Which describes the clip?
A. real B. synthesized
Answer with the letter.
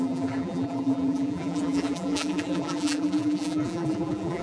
B